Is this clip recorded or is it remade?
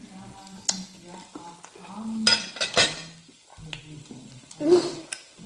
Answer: recorded